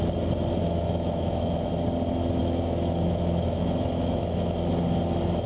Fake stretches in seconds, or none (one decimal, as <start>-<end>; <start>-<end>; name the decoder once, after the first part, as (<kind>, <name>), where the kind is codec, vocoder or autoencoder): 0.6-1.7 (autoencoder, DAC-VAE); 2.4-4.7

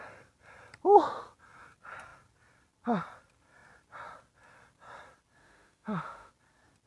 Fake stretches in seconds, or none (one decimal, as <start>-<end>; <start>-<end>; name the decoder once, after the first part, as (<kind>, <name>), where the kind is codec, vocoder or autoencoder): 5.4-6.3 (autoencoder, DAC-VAE)